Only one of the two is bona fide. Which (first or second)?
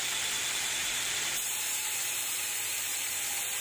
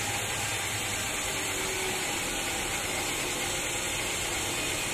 second